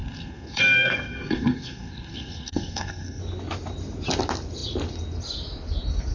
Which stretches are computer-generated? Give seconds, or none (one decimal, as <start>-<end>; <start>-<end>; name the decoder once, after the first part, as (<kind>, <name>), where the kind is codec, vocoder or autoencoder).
0.0-3.2 (codec, SNAC)